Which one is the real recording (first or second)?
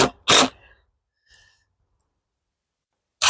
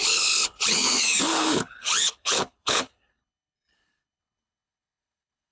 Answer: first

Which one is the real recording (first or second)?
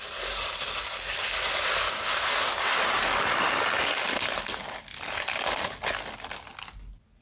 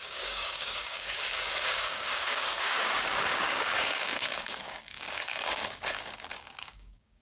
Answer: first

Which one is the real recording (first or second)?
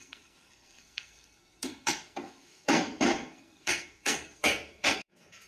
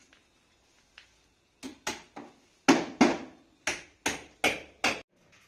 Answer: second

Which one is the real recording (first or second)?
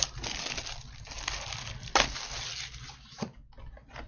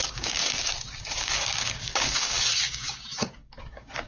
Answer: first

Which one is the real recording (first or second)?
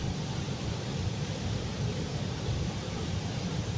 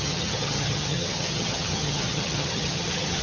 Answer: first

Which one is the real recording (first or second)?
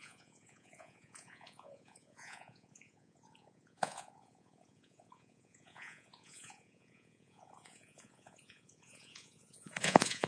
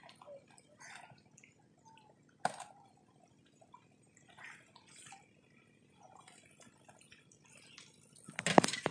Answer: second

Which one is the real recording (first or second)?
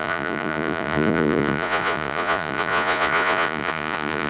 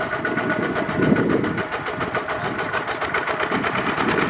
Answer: second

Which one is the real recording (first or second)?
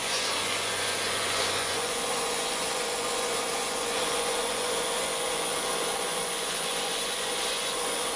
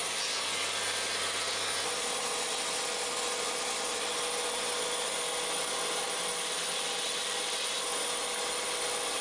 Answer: second